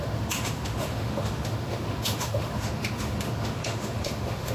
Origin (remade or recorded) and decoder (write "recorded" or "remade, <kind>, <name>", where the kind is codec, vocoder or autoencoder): remade, autoencoder, DAC-VAE